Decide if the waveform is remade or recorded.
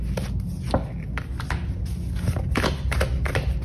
recorded